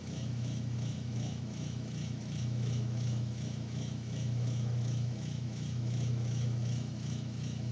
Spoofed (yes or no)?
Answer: yes